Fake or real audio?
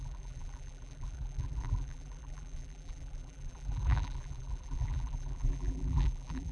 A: fake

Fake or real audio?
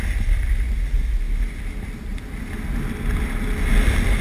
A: real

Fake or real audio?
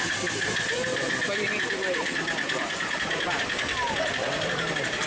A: fake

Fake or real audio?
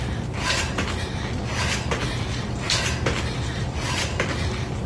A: real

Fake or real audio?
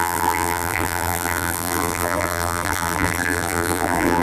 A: fake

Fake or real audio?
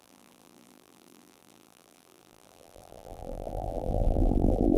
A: fake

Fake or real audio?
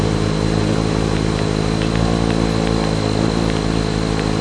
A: real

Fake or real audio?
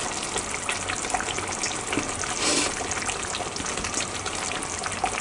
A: real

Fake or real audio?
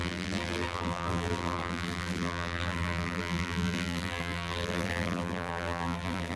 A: fake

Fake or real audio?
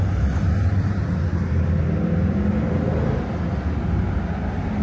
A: real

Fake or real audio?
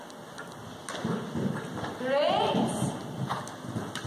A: real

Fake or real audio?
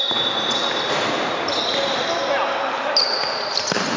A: real